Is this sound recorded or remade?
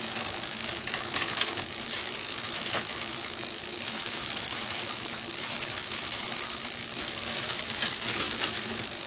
remade